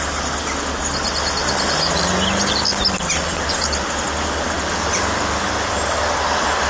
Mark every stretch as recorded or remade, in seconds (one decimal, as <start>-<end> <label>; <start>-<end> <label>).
0.0-1.4 recorded; 1.4-5.4 remade; 5.4-6.7 recorded